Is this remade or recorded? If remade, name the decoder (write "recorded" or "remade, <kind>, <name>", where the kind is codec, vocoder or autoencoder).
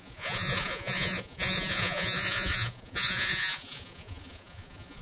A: remade, vocoder, Vocos